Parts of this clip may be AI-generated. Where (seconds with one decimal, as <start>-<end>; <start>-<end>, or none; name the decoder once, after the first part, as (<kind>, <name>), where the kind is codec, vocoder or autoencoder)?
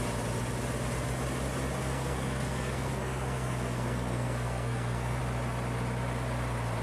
1.8-5.2 (codec, SNAC)